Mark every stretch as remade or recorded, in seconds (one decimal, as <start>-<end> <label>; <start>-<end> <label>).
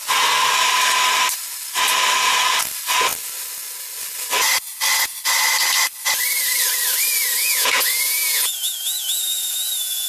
0.0-7.4 recorded; 7.4-10.1 remade